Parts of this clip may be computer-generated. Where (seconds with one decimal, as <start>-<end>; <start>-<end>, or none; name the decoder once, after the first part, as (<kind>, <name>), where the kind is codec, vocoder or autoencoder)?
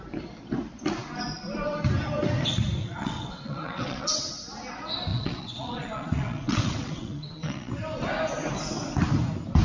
2.8-4.2 (vocoder, WaveNeXt); 5.1-7.7